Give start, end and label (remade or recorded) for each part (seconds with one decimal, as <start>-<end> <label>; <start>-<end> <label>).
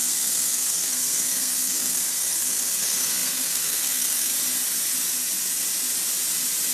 0.0-4.3 remade; 4.3-6.7 recorded